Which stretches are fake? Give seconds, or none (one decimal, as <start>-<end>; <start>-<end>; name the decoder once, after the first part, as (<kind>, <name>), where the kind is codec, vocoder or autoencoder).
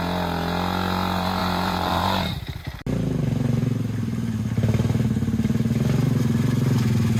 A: 1.4-2.6 (vocoder, BigVGAN v2)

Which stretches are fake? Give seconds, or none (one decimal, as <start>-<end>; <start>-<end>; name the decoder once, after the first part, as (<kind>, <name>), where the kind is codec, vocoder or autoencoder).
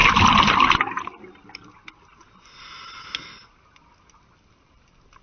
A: none